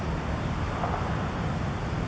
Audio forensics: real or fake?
real